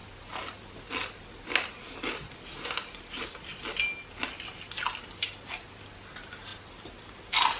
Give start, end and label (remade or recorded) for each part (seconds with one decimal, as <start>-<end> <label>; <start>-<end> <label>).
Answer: 0.0-7.6 recorded